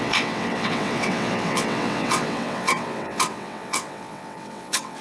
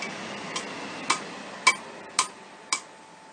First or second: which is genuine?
second